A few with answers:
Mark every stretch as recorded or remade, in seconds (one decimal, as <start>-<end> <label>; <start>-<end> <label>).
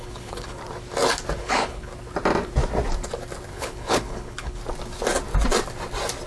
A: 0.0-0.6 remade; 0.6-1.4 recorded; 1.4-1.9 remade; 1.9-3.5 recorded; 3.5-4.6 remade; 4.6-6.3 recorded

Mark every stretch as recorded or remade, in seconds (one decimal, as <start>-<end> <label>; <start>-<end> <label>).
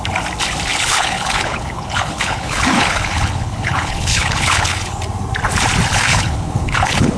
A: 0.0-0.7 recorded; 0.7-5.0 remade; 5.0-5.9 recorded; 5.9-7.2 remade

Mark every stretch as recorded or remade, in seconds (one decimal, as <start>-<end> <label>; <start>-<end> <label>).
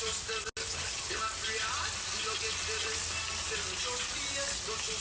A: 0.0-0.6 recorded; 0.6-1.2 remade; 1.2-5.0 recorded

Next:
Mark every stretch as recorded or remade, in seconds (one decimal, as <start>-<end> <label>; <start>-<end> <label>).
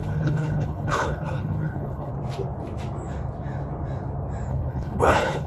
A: 0.0-2.1 remade; 2.1-4.5 recorded; 4.5-5.5 remade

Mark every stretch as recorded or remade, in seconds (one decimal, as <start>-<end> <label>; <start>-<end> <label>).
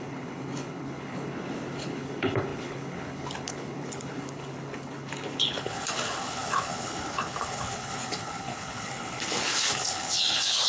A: 0.0-10.7 remade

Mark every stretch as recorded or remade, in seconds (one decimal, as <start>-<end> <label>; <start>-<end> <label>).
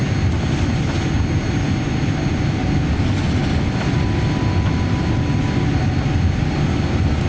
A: 0.0-7.3 recorded